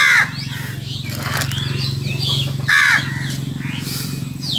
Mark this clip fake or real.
real